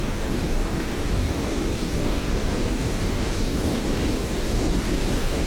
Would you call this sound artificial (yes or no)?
yes